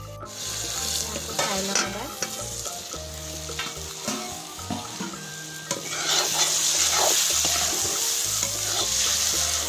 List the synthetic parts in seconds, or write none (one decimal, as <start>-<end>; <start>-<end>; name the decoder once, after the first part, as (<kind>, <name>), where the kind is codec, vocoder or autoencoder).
4.1-5.3 (codec, DAC)

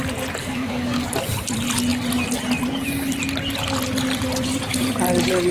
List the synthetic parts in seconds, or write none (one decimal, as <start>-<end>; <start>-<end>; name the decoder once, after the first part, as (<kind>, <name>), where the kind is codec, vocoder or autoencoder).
0.4-1.1 (codec, DAC)

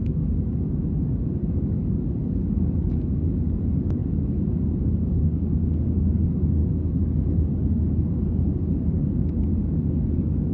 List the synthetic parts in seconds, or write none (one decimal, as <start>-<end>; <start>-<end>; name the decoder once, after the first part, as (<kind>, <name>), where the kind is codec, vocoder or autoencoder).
0.0-0.8 (codec, DAC); 1.4-10.5

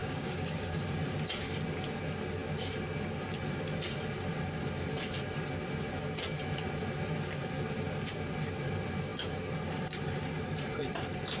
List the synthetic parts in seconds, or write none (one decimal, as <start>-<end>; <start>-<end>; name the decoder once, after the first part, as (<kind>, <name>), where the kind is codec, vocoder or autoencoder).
0.0-0.8 (codec, DAC)